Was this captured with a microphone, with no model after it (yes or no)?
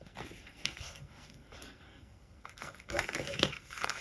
no